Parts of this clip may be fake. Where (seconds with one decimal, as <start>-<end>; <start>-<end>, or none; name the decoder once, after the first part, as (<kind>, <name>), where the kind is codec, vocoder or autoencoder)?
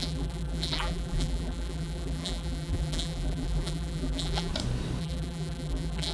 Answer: 0.0-4.5 (vocoder, BigVGAN v2); 5.0-6.1